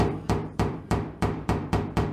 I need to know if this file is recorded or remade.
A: remade